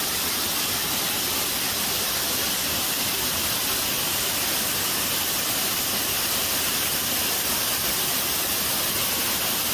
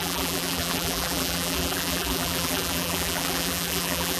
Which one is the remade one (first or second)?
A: second